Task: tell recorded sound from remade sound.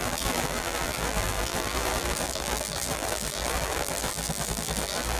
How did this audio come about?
remade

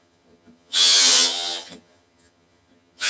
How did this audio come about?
remade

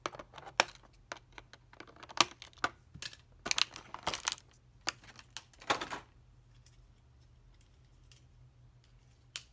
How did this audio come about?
recorded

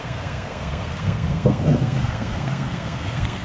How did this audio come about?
remade